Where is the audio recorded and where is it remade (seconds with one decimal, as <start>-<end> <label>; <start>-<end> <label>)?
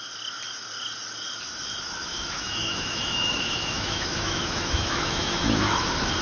0.0-2.0 recorded; 2.0-5.7 remade; 5.7-6.2 recorded